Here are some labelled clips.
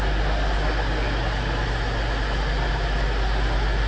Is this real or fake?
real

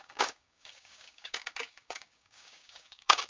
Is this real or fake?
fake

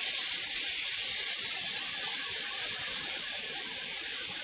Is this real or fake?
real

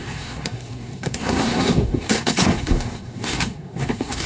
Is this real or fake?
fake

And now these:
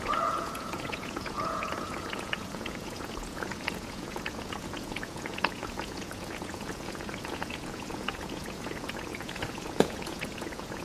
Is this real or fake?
fake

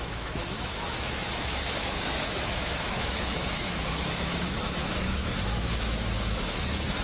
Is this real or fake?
fake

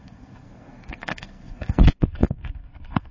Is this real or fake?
fake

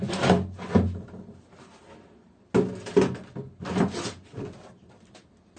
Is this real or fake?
real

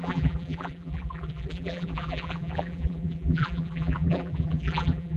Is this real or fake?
fake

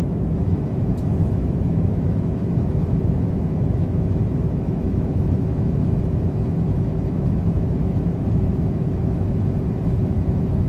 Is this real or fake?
fake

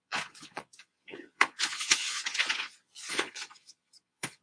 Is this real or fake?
fake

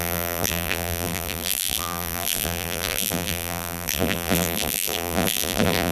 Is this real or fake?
fake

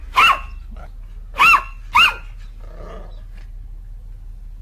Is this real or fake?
real